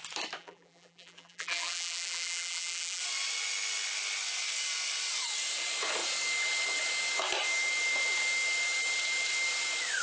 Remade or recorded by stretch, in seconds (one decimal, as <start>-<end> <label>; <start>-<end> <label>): 0.0-0.4 recorded; 0.4-3.0 remade; 3.0-10.0 recorded